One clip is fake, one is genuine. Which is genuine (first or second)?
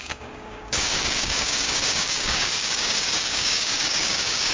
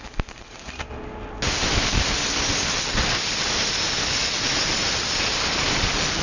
second